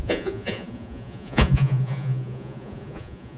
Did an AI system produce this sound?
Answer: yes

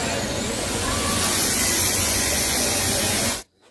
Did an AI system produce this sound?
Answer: yes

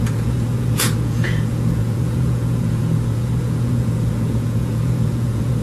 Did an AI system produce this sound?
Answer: yes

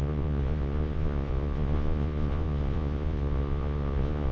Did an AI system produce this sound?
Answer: yes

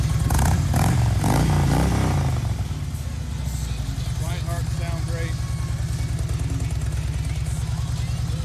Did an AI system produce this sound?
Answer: no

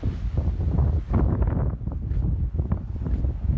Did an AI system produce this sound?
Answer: no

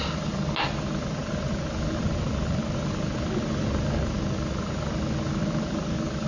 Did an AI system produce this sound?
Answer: no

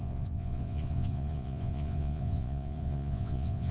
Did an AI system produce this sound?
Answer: yes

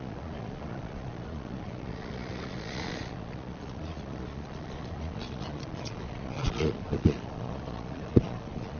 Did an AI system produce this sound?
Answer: yes